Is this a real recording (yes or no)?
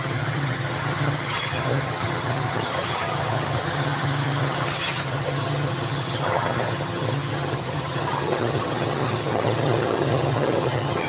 no